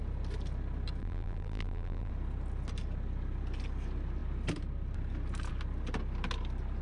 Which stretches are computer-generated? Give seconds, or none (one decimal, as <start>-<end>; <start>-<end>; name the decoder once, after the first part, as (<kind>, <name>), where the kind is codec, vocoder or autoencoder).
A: 1.0-2.1 (vocoder, BigVGAN v2)